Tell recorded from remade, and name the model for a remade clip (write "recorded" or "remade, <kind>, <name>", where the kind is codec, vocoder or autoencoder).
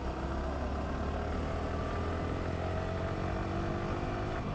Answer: recorded